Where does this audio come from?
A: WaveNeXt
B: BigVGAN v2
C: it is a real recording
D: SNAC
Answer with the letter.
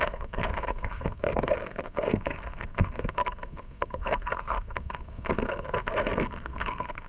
D